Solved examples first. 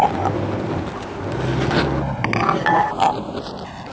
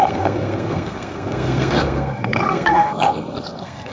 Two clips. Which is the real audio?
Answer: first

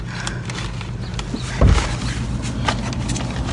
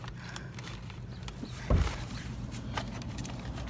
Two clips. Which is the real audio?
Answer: first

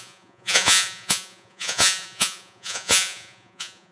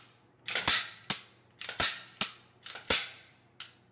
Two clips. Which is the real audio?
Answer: second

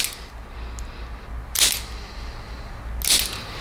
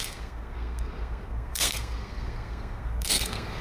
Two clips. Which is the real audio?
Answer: first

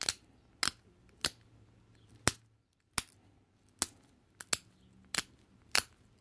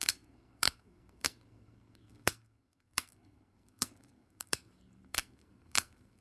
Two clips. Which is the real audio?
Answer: first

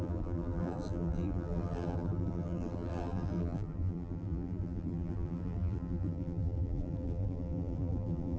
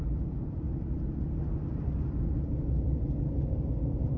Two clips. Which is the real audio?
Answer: second